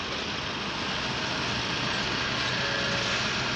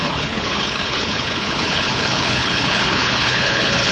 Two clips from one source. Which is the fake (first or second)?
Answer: second